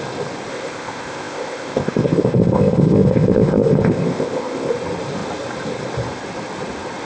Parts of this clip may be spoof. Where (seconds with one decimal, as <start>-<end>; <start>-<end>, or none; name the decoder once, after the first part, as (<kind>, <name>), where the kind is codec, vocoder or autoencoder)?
0.5-4.7 (codec, ZipCodec)